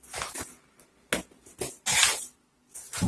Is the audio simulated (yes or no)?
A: no